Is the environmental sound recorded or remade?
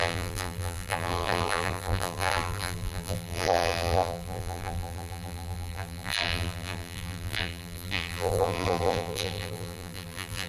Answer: remade